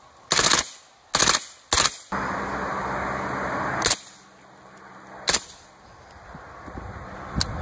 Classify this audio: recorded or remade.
recorded